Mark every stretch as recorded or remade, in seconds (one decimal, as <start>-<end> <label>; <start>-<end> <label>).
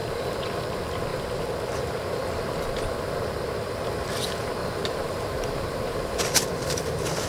0.0-4.6 recorded; 4.6-6.2 remade; 6.2-7.3 recorded